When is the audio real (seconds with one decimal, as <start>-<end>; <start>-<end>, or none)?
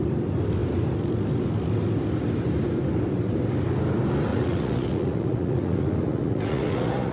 0.0-4.3